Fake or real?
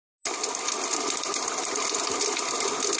real